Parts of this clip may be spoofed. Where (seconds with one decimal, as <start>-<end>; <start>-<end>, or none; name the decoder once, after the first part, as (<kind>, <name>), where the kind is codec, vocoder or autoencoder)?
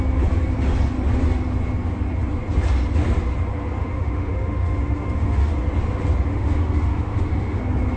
3.8-5.5 (autoencoder, DAC-VAE); 6.3-7.6